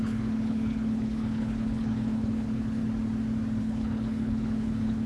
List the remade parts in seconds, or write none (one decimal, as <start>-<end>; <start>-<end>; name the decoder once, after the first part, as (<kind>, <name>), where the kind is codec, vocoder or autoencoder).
0.0-2.8 (codec, HILCodec); 3.6-5.1